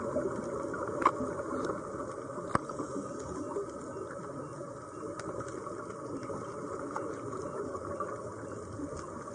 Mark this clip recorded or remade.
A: recorded